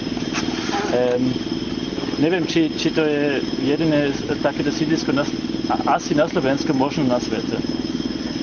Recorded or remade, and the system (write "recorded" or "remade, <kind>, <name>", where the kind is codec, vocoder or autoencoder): recorded